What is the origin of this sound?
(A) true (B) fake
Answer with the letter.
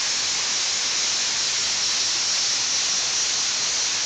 A